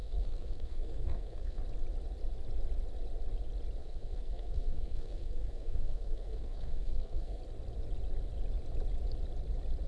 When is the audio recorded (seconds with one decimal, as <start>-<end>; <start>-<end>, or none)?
1.6-3.8; 7.4-9.9